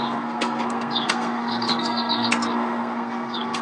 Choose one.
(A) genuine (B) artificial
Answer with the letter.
B